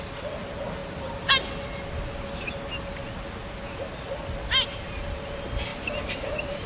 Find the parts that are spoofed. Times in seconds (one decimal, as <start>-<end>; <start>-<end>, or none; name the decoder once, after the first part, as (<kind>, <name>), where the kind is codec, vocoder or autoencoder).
5.7-6.7 (vocoder, BigVGAN v2)